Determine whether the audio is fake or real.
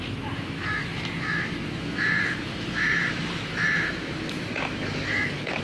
fake